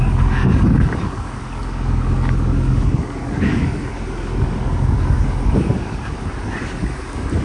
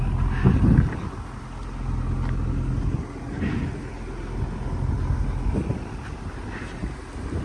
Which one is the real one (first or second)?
second